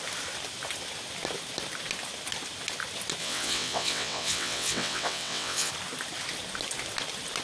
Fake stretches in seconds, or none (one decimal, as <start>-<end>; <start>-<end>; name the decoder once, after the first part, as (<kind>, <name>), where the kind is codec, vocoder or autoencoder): 3.2-5.7 (vocoder, WaveNeXt)